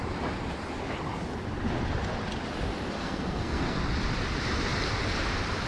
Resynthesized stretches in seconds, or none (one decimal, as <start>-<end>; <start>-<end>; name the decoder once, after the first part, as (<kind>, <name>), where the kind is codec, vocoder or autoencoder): 3.0-3.8 (codec, SNAC)